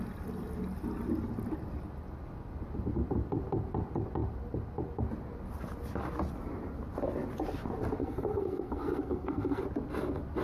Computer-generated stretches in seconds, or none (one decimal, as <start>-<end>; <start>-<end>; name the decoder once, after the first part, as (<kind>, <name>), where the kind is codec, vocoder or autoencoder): 8.0-9.6 (codec, SNAC)